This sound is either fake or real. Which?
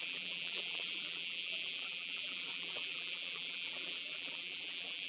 fake